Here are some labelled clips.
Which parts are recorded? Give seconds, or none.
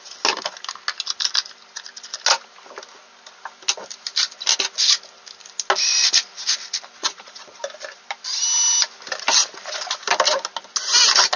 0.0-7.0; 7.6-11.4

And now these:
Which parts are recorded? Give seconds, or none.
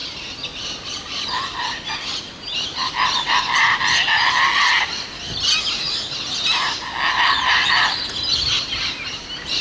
0.0-9.6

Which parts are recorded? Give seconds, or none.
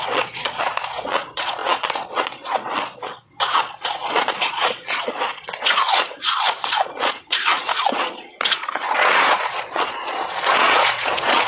none